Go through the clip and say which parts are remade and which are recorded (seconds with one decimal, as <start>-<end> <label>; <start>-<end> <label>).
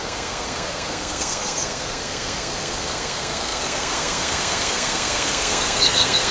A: 0.0-6.3 remade